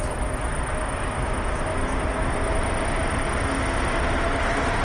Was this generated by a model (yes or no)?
no